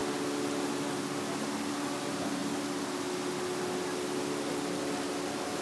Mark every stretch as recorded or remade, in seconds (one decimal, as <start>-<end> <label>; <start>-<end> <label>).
0.0-5.6 recorded